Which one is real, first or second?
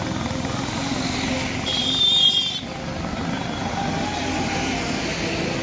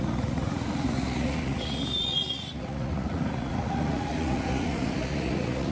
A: first